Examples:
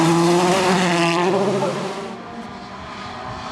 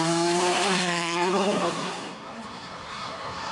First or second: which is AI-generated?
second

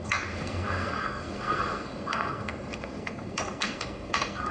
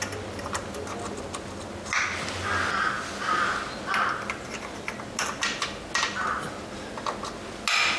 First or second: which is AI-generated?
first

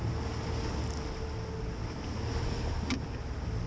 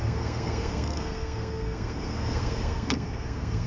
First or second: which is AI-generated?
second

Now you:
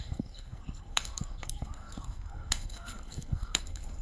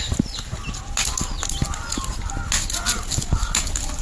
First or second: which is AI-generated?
first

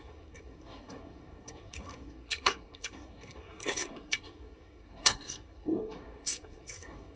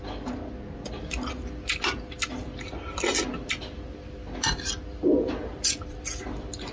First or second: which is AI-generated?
first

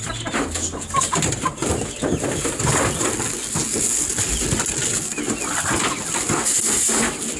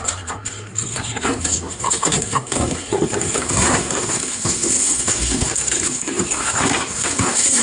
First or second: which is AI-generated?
second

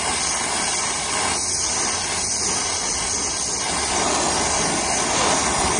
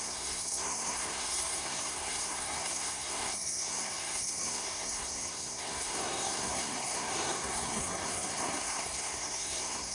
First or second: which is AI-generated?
second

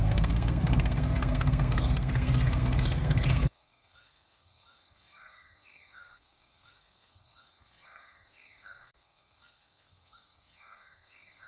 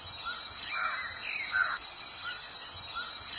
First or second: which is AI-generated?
first